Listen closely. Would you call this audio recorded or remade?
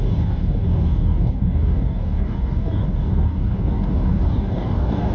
remade